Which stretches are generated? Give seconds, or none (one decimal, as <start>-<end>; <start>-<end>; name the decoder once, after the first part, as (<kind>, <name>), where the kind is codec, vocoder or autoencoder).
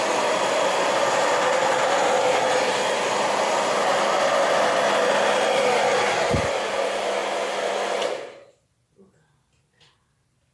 none